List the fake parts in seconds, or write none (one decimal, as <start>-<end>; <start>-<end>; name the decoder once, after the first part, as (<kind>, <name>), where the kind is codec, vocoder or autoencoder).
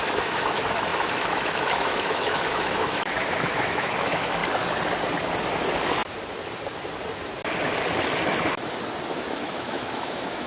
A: 0.0-4.4 (autoencoder, DAC-VAE); 9.4-10.5